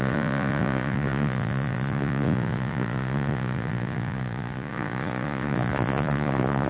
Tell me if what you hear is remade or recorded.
remade